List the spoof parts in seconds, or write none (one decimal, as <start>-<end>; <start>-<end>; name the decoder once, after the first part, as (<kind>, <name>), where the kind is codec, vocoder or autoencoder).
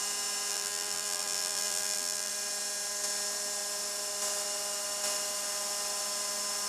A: 0.5-2.3 (vocoder, BigVGAN v2)